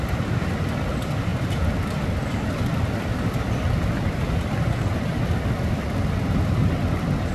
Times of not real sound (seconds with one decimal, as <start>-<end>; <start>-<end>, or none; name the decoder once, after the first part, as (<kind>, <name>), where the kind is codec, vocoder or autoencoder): none